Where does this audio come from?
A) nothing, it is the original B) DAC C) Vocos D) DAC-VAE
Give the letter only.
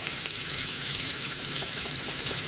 D